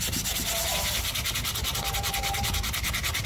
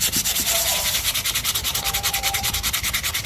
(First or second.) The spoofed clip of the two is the second